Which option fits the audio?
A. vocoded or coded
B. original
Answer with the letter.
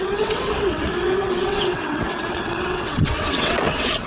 A